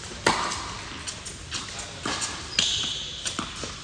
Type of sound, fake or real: real